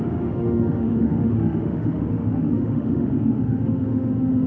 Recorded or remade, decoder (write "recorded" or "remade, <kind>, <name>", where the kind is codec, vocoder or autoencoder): remade, autoencoder, DAC-VAE